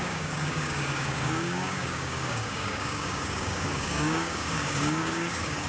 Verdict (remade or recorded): remade